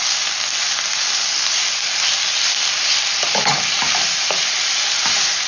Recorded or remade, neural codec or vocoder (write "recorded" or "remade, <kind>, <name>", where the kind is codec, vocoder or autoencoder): recorded